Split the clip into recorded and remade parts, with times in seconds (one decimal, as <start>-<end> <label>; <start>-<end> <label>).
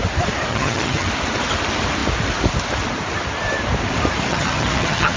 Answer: 0.0-0.5 recorded; 0.5-1.1 remade; 1.1-4.3 recorded; 4.3-5.2 remade